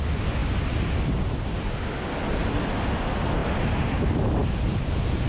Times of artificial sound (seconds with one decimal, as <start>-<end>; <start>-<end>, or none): 3.4-3.9